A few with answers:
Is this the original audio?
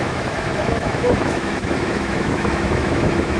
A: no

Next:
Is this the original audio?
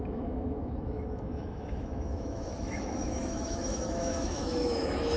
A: no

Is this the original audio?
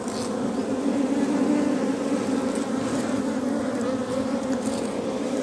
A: yes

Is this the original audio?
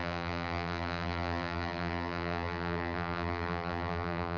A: no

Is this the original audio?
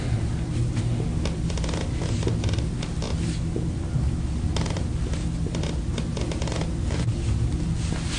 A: yes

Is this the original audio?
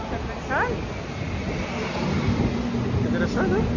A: yes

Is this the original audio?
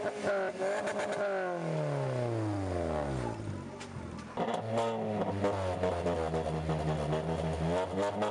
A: yes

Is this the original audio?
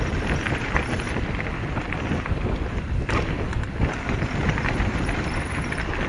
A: no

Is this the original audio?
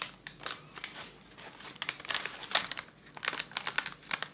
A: yes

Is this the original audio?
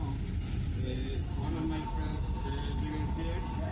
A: yes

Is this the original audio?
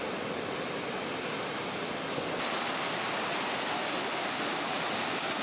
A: yes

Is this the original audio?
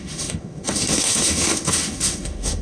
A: no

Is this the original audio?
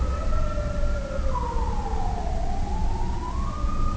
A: yes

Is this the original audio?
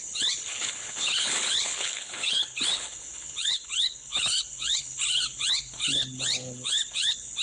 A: no